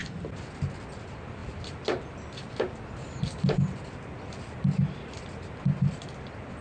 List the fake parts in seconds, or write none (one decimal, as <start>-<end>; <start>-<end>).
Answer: none